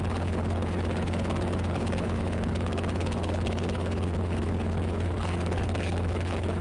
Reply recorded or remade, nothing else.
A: remade